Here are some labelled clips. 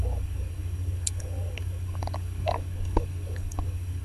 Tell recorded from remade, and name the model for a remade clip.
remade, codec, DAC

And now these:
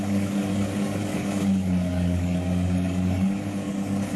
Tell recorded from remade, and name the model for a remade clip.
remade, codec, DAC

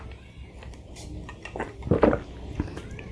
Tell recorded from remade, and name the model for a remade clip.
recorded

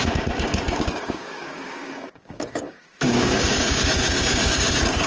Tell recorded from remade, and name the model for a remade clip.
remade, codec, DAC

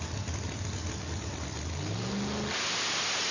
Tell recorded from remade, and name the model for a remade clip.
recorded